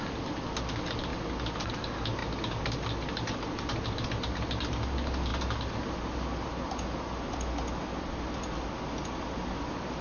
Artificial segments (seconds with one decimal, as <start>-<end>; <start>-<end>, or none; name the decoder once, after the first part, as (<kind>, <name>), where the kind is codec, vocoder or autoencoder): none